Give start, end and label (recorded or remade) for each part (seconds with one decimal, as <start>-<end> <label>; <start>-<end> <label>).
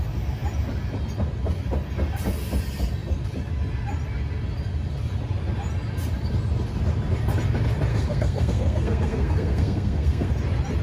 0.0-7.9 recorded; 7.9-10.3 remade; 10.3-10.8 recorded